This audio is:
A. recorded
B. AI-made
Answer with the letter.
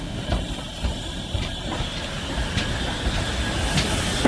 A